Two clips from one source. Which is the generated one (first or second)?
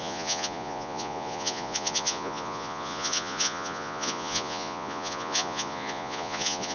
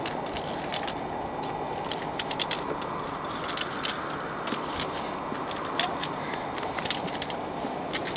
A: first